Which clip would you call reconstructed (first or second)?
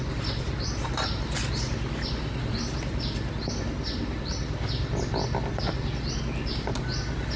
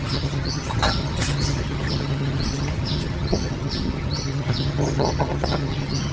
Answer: second